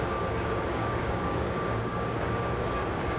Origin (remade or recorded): remade